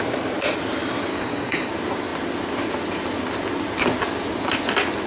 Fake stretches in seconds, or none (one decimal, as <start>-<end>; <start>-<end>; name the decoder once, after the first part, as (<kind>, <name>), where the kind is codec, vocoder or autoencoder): 1.1-1.7 (codec, DAC)